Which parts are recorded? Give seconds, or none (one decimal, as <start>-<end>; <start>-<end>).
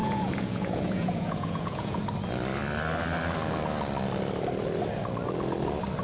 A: 2.0-6.0